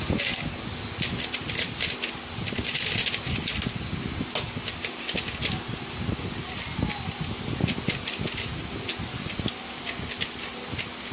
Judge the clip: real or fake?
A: real